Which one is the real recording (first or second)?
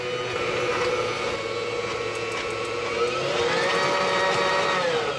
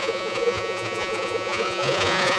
first